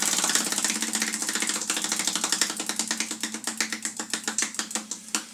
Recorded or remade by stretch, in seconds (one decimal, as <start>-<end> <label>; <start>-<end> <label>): 0.0-5.3 recorded